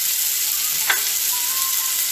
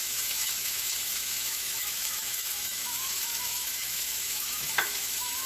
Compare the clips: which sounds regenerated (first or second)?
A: second